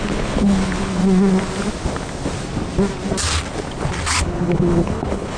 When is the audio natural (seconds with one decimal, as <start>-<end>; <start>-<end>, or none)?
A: 1.0-4.2